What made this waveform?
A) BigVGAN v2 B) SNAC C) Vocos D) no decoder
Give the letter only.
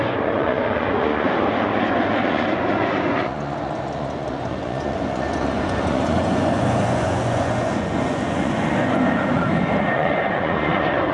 C